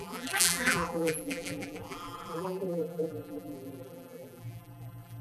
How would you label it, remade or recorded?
remade